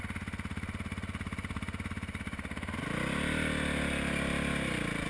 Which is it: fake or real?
real